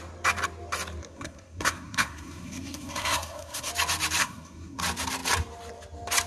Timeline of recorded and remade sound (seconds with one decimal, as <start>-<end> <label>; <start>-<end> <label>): 0.0-1.0 recorded; 1.0-3.7 remade; 3.7-4.2 recorded; 4.2-4.8 remade; 4.8-6.3 recorded